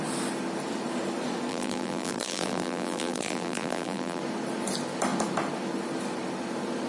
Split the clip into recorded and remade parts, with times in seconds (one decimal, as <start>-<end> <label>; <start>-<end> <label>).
0.0-1.5 recorded; 1.5-4.2 remade; 4.2-6.9 recorded